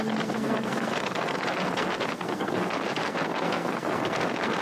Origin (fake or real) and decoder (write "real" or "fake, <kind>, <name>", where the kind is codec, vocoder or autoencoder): fake, codec, SNAC